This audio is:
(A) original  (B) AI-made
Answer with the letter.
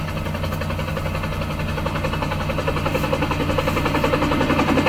A